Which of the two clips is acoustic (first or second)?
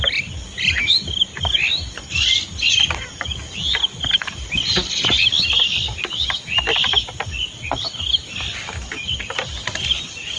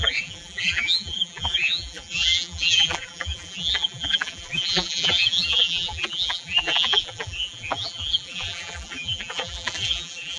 first